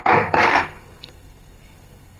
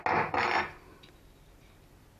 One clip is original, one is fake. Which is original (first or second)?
second